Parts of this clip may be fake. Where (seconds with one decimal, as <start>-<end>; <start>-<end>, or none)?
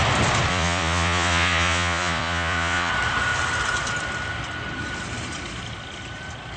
0.5-2.9